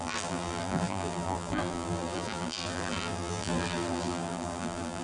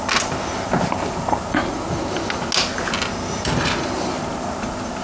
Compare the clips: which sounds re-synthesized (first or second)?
first